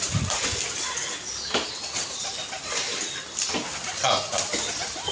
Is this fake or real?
real